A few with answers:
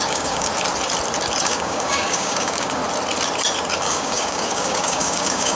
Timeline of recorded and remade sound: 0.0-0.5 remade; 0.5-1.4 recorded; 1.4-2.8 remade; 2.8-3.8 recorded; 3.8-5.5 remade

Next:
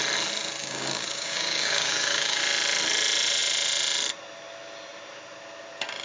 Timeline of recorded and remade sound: 0.0-0.6 recorded; 0.6-2.4 remade; 2.4-6.0 recorded

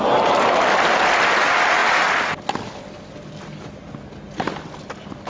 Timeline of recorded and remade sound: 0.0-5.3 recorded

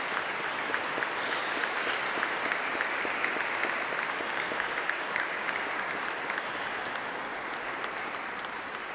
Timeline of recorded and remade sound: 0.0-4.3 recorded; 4.3-5.9 remade; 5.9-8.9 recorded

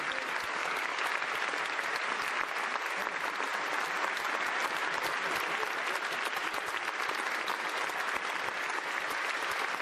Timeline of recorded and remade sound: 0.0-0.6 recorded; 0.6-1.1 remade; 1.1-9.8 recorded

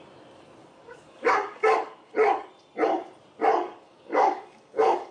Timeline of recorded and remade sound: 0.0-0.6 recorded; 0.6-2.5 remade; 2.5-3.5 recorded; 3.5-5.1 remade

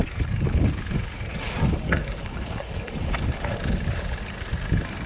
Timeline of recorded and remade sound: 0.0-0.7 remade; 0.7-1.3 recorded; 1.3-3.6 remade; 3.6-5.1 recorded

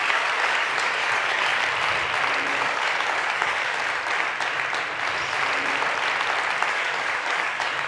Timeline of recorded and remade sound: 0.0-1.5 remade; 1.5-2.5 recorded; 2.5-3.8 remade; 3.8-6.7 recorded; 6.7-7.9 remade